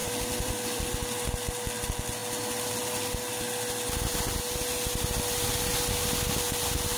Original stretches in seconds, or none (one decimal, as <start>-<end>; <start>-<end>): 0.8-7.0